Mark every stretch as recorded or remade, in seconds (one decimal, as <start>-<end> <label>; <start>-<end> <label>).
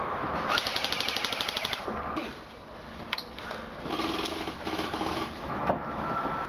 0.0-0.7 remade; 0.7-4.3 recorded; 4.3-6.5 remade